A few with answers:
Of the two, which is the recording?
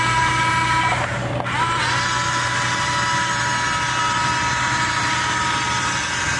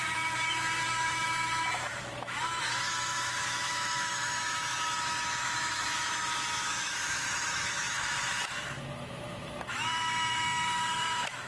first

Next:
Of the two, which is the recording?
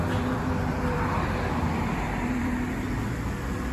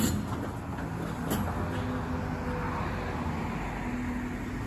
second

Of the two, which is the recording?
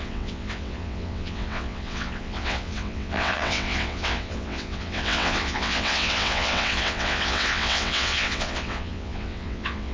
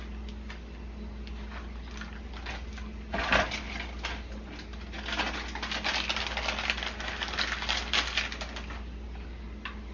second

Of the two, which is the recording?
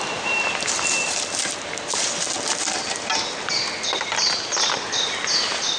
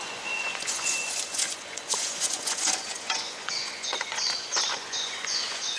first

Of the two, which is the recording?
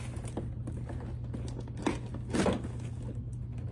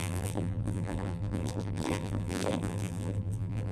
first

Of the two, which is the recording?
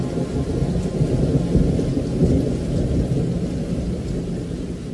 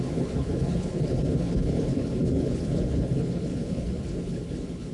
first